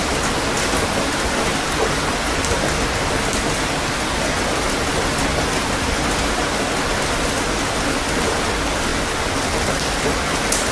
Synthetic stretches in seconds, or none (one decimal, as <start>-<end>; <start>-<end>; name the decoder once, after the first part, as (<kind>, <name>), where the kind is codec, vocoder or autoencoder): 8.9-10.0 (vocoder, BigVGAN v2)